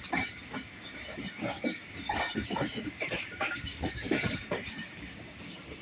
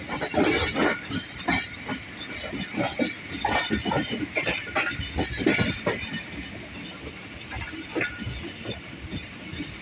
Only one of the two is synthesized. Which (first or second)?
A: first